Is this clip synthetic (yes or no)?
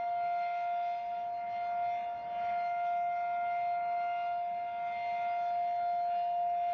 no